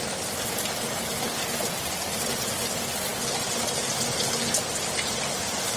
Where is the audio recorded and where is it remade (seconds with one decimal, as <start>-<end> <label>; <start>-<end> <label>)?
0.0-5.8 recorded